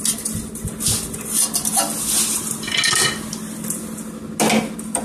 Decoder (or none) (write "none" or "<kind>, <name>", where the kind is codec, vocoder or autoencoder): none